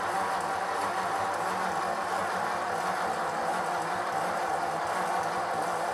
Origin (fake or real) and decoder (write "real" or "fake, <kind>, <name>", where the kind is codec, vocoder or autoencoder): real